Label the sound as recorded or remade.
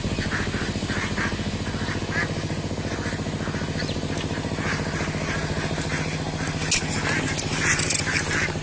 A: recorded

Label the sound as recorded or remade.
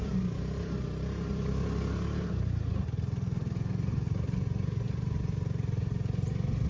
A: recorded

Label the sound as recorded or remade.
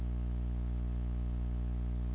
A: recorded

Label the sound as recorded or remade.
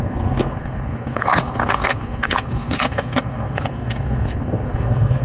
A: remade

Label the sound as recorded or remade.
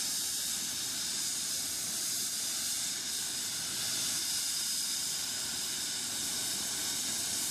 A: recorded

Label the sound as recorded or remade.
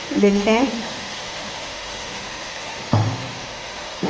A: remade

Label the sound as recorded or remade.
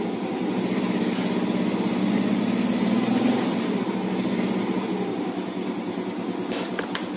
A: recorded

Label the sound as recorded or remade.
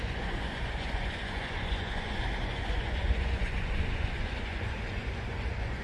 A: remade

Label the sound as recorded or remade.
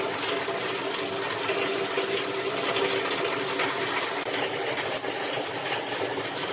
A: recorded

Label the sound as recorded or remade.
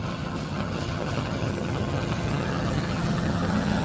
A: remade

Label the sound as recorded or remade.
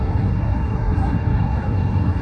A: remade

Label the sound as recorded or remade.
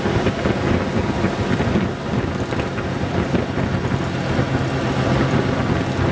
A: recorded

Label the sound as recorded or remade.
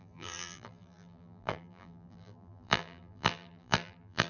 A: remade